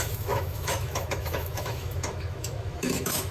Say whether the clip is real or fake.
fake